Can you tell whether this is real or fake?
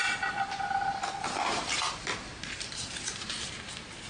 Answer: real